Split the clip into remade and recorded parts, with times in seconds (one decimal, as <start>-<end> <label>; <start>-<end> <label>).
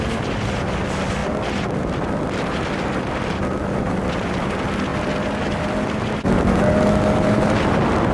0.0-8.1 recorded